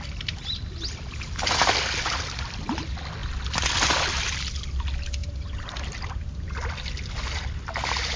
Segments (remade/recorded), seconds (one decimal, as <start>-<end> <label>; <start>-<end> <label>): 0.0-8.2 recorded